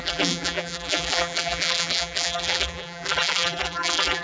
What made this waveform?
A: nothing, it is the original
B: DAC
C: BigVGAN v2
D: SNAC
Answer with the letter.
C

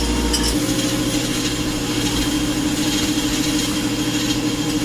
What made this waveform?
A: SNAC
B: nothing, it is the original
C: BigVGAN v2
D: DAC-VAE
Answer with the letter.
B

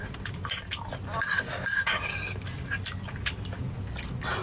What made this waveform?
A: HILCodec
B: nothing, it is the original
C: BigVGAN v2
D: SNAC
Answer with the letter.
B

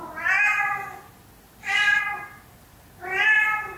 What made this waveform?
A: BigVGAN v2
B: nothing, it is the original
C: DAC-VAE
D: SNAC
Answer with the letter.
B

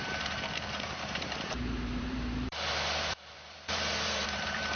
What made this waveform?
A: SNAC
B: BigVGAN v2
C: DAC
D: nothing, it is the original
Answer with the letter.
B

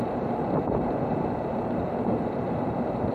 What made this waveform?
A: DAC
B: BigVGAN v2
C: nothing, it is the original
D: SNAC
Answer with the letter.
B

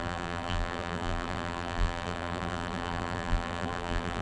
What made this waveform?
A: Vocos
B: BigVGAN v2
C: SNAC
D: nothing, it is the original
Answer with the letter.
B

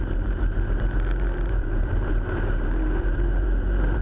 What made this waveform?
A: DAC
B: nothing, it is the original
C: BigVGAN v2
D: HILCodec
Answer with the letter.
C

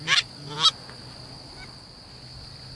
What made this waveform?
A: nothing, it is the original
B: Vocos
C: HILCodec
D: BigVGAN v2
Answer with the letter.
A